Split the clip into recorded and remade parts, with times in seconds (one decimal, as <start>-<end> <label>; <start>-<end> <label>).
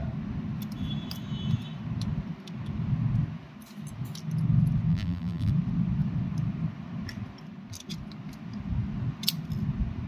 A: 0.0-4.9 recorded; 4.9-5.5 remade; 5.5-10.1 recorded